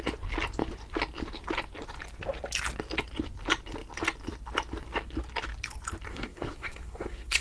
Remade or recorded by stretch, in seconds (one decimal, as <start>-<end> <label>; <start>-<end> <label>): 0.0-6.1 recorded; 6.1-7.4 remade